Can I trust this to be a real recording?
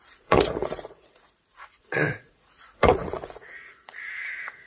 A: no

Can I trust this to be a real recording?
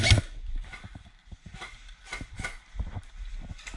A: yes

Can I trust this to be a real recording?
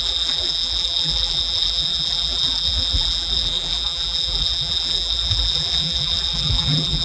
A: no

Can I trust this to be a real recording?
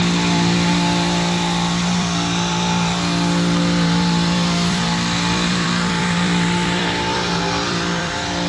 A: no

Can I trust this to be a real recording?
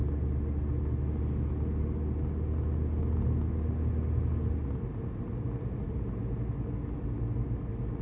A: yes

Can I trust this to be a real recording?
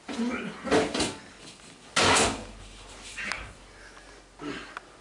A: yes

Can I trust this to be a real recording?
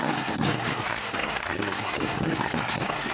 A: no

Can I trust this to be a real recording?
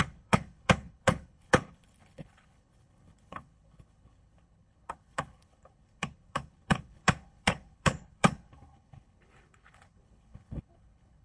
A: no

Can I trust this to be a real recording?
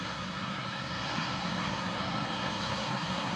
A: no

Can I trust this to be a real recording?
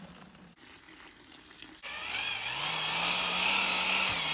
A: yes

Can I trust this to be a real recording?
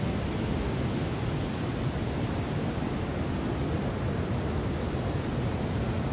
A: yes